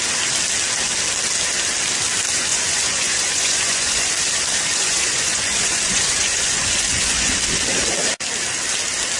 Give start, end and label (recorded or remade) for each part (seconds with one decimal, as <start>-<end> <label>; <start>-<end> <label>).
0.0-2.5 recorded; 2.5-4.1 remade; 4.1-4.7 recorded; 4.7-7.3 remade; 7.3-9.2 recorded